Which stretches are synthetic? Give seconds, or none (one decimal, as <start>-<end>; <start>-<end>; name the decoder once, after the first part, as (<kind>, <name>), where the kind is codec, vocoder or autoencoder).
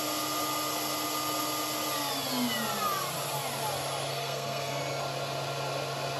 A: 4.1-4.8 (codec, SNAC)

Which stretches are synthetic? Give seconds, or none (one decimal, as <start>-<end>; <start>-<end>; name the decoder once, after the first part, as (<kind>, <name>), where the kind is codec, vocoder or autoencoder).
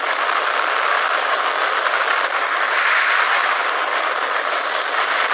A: 0.0-3.6 (vocoder, BigVGAN v2); 4.3-5.3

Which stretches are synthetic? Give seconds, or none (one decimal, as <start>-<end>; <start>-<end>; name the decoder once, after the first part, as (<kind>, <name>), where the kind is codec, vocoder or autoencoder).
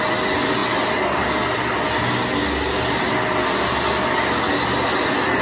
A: none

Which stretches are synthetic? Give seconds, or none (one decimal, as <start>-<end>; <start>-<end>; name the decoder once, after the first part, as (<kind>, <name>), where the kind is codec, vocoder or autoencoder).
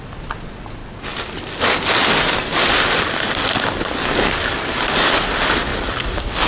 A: none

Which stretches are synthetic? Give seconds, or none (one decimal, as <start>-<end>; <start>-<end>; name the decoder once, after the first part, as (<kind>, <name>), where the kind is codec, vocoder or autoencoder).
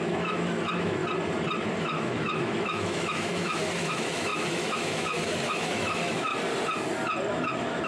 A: 0.0-1.0 (autoencoder, DAC-VAE); 1.8-6.3; 7.3-7.9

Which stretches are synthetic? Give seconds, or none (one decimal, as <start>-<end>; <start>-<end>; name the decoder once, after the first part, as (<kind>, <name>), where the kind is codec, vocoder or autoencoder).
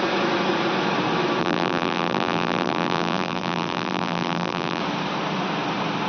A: 1.4-4.8 (vocoder, BigVGAN v2)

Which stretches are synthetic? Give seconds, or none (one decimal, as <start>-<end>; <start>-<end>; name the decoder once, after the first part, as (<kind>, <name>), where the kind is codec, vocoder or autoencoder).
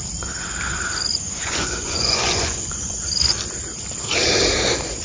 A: 1.1-3.0 (vocoder, Vocos)